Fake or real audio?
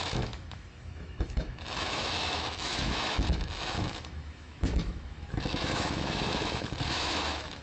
fake